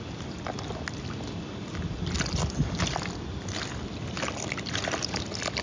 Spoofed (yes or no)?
no